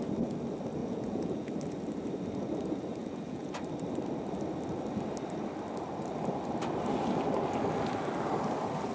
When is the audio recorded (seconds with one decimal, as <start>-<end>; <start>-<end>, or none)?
0.0-0.8; 1.5-3.0; 3.6-8.9